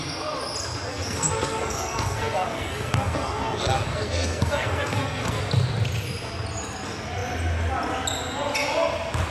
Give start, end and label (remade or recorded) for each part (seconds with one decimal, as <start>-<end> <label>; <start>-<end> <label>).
0.0-0.9 recorded; 0.9-5.4 remade; 5.4-9.3 recorded